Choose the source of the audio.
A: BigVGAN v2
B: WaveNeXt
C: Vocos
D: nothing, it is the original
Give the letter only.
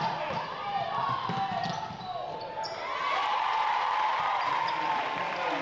D